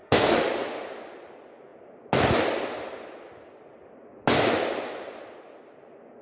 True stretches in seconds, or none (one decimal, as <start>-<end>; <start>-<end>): 0.5-6.2